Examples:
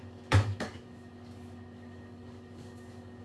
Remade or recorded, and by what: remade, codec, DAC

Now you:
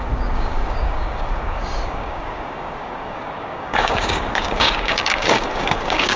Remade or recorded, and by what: remade, codec, DAC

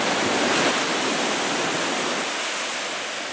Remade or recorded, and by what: recorded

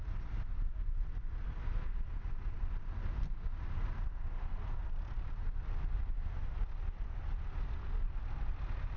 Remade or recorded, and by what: recorded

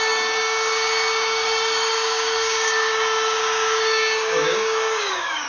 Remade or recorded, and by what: remade, codec, DAC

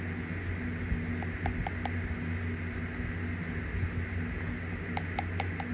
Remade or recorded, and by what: recorded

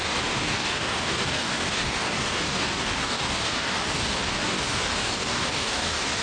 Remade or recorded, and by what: remade, codec, DAC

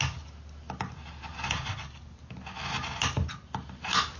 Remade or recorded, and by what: recorded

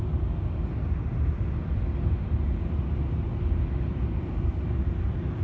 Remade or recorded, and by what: recorded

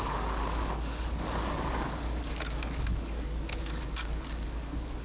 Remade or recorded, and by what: remade, codec, DAC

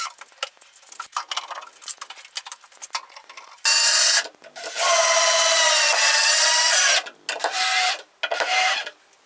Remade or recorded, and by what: recorded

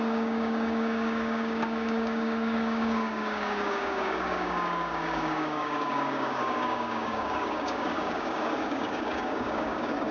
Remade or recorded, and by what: remade, codec, DAC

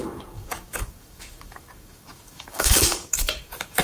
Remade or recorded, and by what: remade, codec, DAC